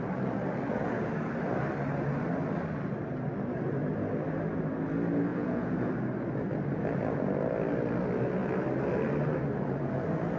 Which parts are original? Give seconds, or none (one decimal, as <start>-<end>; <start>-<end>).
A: 0.0-5.3; 5.9-10.4